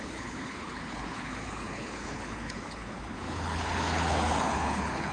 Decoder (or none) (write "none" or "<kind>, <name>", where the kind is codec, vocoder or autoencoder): codec, HILCodec